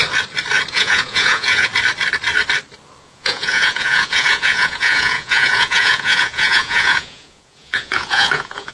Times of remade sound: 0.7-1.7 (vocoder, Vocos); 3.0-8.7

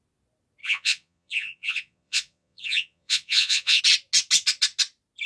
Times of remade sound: 0.6-3.8 (vocoder, Vocos)

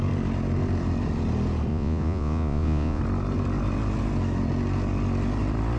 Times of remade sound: 1.7-3.0 (vocoder, Vocos)

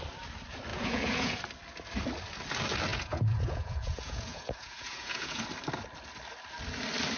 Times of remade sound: 0.7-1.4 (vocoder, Vocos); 2.9-5.4